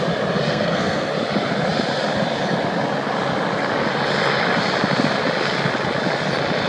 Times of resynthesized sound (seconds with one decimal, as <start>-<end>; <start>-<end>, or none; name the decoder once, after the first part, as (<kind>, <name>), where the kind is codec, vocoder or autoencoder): 0.5-1.1 (codec, SNAC)